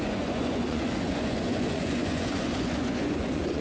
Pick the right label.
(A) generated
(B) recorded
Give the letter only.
A